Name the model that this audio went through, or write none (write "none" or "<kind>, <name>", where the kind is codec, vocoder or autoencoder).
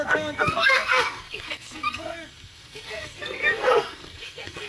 codec, SNAC